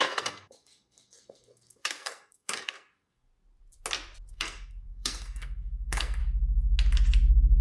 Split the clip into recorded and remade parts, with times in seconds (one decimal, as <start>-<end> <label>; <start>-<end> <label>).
0.0-3.3 remade; 3.3-4.3 recorded; 4.3-6.2 remade; 6.2-7.6 recorded